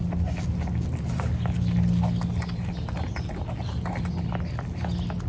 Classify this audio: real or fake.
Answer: real